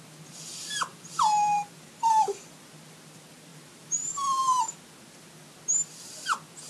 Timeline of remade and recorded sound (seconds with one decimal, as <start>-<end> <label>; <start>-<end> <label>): 0.0-0.9 recorded; 0.9-1.7 remade; 1.7-3.5 recorded; 3.5-4.9 remade; 4.9-6.7 recorded